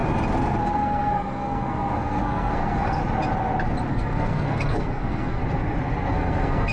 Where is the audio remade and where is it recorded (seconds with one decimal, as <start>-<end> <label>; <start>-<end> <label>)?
0.0-0.6 recorded; 0.6-3.0 remade; 3.0-3.9 recorded; 3.9-5.4 remade; 5.4-6.1 recorded; 6.1-6.7 remade